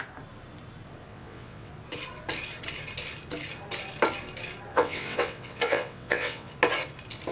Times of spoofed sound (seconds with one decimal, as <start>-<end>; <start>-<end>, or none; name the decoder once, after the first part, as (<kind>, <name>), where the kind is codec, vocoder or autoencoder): 1.1-1.7 (vocoder, WaveNeXt); 4.7-6.5